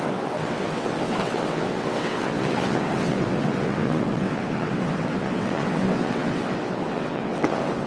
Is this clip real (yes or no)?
no